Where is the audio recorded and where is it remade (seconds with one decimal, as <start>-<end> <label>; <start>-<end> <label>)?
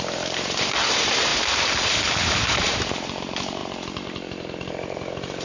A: 0.0-5.4 remade